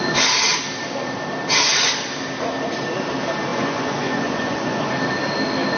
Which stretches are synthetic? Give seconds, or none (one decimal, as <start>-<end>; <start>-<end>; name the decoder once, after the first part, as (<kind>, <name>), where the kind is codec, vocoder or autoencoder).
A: 3.5-4.9 (vocoder, Vocos)